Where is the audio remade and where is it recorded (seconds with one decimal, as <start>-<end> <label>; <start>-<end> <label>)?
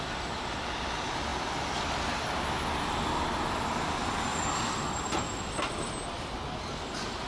0.0-1.3 recorded; 1.3-2.3 remade; 2.3-4.3 recorded; 4.3-5.9 remade; 5.9-7.3 recorded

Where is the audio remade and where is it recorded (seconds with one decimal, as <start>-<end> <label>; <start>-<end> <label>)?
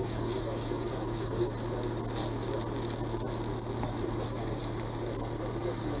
0.0-1.5 remade; 1.5-3.8 recorded; 3.8-4.6 remade; 4.6-5.6 recorded; 5.6-6.0 remade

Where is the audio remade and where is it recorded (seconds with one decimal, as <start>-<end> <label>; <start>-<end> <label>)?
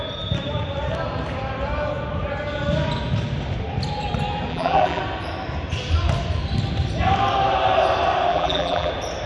0.0-4.5 recorded; 4.5-5.0 remade; 5.0-8.3 recorded; 8.3-8.9 remade; 8.9-9.3 recorded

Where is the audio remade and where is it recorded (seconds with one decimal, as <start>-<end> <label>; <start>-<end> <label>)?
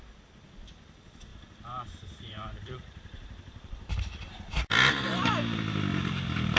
0.0-1.3 recorded; 1.3-5.3 remade; 5.3-5.9 recorded; 5.9-6.6 remade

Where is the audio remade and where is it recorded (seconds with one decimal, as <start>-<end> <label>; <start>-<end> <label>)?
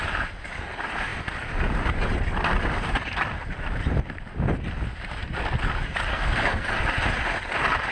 0.0-6.1 recorded; 6.1-6.8 remade; 6.8-7.9 recorded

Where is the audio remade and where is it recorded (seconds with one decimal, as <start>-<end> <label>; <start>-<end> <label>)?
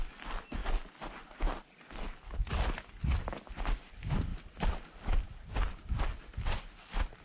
0.0-7.2 recorded